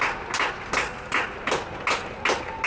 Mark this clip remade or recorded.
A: recorded